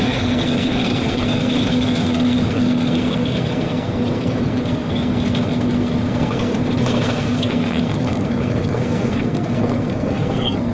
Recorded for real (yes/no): no